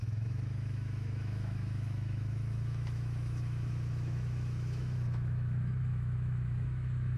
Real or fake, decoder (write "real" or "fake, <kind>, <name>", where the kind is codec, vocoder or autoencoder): fake, autoencoder, DAC-VAE